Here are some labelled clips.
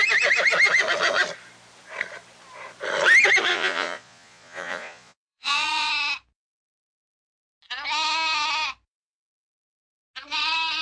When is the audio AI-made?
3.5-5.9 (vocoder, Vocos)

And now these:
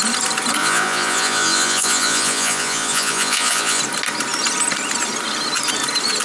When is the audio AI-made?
0.6-3.8 (vocoder, Vocos)

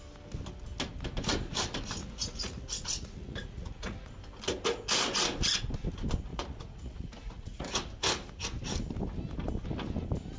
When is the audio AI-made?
2.0-4.1 (vocoder, Vocos); 6.3-7.7